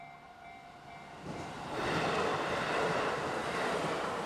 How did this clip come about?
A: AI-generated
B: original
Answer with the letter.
B